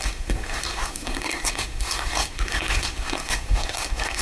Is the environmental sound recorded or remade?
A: remade